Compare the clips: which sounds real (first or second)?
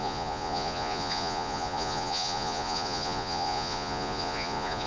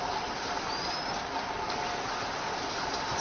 second